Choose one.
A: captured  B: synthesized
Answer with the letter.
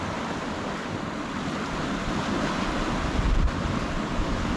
A